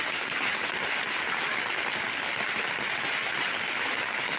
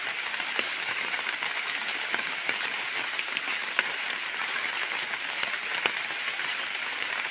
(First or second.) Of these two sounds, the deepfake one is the second